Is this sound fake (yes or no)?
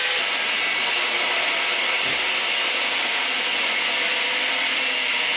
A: no